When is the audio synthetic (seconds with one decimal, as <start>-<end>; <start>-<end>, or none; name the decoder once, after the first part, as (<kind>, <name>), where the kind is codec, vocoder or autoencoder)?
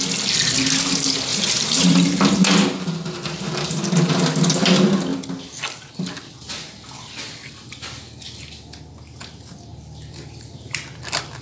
1.3-4.1 (vocoder, BigVGAN v2); 9.7-11.0